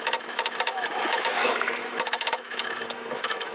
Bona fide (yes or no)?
no